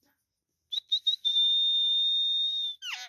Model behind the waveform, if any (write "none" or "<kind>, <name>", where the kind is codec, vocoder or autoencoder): none